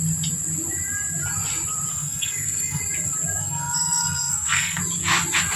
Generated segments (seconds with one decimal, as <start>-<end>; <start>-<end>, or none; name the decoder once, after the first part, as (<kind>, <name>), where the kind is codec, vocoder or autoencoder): 1.9-2.8 (codec, SNAC); 3.4-4.8